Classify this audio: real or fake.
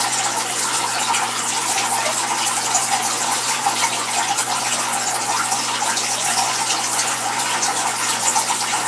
fake